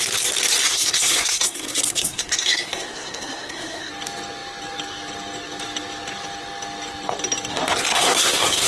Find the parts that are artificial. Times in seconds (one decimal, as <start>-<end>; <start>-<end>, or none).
0.7-3.9; 7.9-8.7